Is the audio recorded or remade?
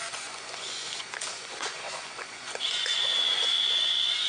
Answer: remade